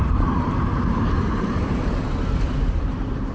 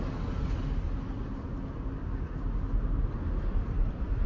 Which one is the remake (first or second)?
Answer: first